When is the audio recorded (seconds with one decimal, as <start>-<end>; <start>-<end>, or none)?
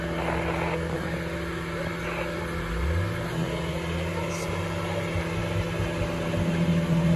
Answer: 0.0-7.2